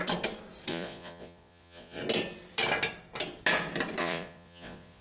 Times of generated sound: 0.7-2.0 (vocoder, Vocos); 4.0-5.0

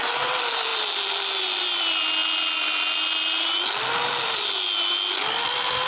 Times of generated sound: none